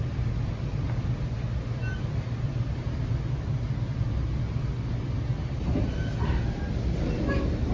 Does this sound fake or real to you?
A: real